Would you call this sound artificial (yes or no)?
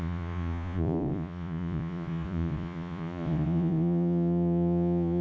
yes